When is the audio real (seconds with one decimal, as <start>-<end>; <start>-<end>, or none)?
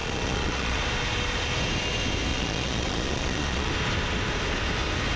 0.8-2.3; 3.7-5.2